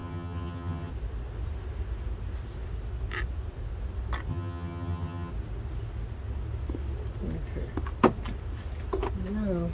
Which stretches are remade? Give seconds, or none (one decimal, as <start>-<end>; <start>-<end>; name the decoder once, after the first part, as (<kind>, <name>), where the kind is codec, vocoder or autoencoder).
0.0-0.9 (vocoder, HiFi-GAN); 4.3-5.3